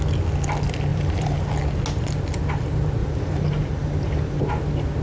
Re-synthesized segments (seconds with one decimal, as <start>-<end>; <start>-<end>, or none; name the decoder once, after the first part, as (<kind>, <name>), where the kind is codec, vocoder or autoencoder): 0.9-1.4 (vocoder, BigVGAN v2); 3.0-4.4